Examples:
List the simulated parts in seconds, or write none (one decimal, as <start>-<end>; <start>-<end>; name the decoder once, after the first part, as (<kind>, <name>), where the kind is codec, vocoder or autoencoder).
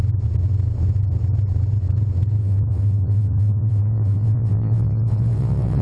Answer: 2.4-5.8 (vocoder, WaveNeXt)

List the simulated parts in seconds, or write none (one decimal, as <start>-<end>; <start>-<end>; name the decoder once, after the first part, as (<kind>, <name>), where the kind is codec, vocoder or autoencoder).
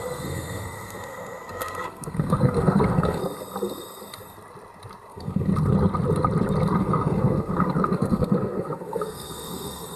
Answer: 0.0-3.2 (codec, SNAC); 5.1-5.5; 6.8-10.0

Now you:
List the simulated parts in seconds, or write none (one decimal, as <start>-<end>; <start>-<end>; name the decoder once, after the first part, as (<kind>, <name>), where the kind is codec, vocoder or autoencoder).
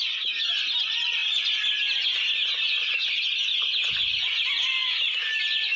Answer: none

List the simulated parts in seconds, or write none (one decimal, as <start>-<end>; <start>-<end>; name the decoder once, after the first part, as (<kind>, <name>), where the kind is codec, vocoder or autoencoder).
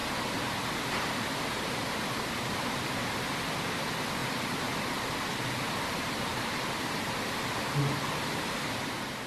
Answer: 1.2-6.3 (vocoder, BigVGAN v2)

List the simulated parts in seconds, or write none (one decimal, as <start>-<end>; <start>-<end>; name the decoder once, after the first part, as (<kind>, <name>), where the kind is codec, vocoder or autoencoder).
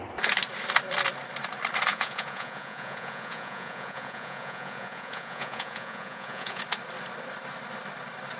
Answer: 1.9-6.6 (vocoder, Vocos)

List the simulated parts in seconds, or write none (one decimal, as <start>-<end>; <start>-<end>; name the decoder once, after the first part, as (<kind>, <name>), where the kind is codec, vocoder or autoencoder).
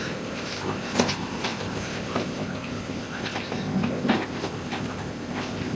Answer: 0.0-5.7 (codec, ZipCodec)